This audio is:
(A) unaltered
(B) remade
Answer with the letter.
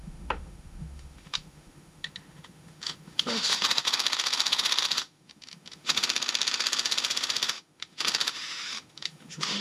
B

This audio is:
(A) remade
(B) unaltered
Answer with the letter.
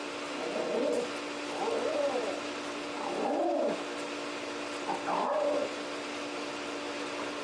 B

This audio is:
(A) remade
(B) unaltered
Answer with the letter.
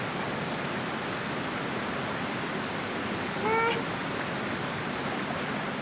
B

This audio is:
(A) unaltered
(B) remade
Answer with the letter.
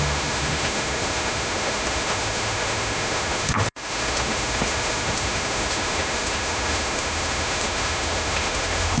B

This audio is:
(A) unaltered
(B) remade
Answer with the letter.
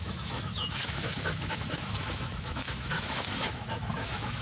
B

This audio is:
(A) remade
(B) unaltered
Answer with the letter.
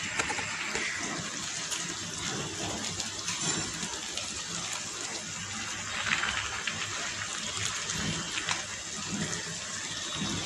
B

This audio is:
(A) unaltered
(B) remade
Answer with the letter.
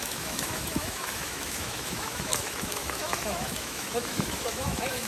B